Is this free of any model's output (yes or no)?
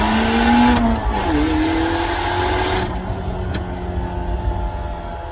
yes